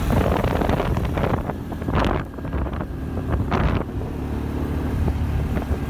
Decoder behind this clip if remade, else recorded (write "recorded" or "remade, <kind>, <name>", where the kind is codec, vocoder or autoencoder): recorded